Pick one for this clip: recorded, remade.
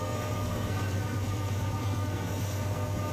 remade